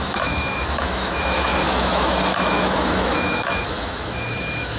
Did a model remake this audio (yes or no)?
yes